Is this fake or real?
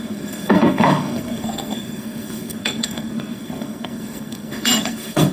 fake